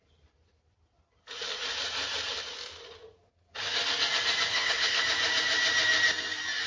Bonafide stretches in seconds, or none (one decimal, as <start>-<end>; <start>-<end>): 0.0-4.5; 5.0-6.7